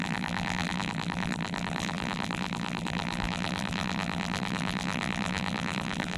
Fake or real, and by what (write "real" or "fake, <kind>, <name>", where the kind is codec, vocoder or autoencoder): fake, vocoder, BigVGAN v2